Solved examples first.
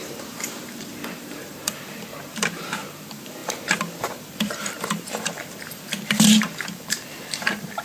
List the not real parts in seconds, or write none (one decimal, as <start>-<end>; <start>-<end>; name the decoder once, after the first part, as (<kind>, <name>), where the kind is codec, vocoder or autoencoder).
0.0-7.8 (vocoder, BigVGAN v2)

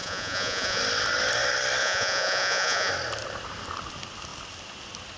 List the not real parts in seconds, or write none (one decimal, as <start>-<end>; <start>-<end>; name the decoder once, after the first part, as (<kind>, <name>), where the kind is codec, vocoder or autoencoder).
0.0-0.8 (vocoder, Vocos); 1.8-2.9

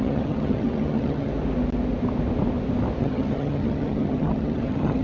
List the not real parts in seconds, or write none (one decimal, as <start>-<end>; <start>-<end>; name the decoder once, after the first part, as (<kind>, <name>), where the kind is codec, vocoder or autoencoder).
0.0-1.3 (vocoder, HiFi-GAN); 3.0-5.0

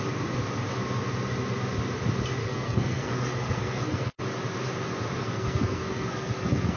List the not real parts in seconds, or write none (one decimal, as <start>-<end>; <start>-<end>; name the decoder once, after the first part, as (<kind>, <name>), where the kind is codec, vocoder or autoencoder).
2.4-4.2 (codec, SNAC); 5.2-6.8

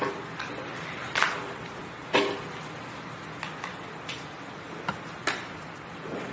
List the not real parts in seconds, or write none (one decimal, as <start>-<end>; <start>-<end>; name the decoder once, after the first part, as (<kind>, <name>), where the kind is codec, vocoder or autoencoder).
none

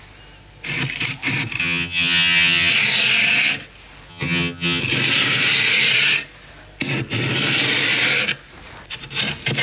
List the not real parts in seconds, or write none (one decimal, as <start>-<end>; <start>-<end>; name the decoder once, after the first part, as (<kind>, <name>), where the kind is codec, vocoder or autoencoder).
1.6-2.7 (vocoder, HiFi-GAN); 4.1-4.8